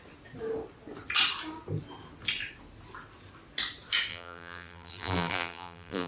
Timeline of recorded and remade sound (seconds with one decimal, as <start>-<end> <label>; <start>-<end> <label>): 0.0-4.1 recorded; 4.1-6.1 remade